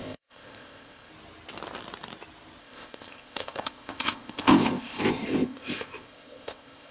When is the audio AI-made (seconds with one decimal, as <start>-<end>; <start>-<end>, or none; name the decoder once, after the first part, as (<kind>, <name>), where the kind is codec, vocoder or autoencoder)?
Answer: 0.0-1.1 (codec, ZipCodec); 2.6-6.9